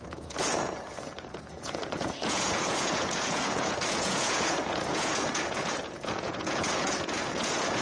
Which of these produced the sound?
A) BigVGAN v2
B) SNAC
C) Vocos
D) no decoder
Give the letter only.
C